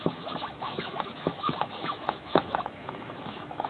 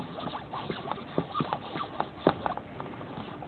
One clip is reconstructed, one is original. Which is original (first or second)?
second